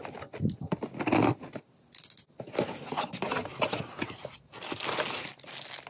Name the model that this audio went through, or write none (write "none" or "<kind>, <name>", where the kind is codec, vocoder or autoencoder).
none